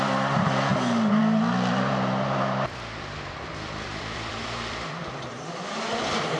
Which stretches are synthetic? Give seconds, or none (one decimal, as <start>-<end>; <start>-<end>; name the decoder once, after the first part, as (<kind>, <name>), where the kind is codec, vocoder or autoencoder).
3.9-4.4 (vocoder, BigVGAN v2); 5.0-5.9